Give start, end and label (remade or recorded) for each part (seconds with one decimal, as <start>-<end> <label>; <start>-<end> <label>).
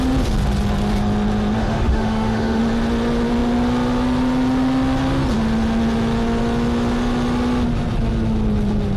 0.0-1.6 recorded; 1.6-2.6 remade; 2.6-9.0 recorded